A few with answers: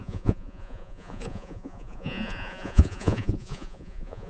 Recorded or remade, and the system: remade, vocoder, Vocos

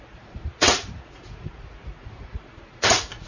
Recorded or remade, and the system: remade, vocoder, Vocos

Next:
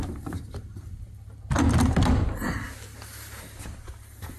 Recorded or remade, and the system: recorded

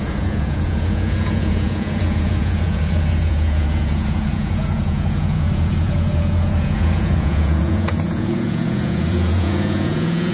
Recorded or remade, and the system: remade, vocoder, Vocos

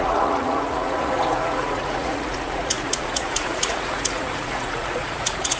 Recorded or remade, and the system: remade, vocoder, Vocos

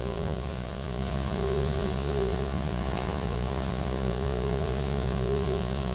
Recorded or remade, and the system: remade, vocoder, Vocos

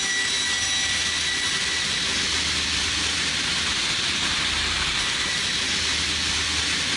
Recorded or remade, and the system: recorded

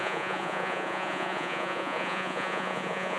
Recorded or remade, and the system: remade, vocoder, Vocos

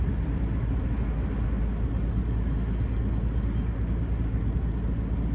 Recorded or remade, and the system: recorded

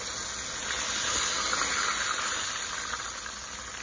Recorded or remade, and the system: recorded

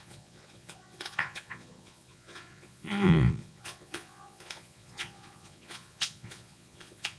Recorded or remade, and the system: remade, vocoder, Vocos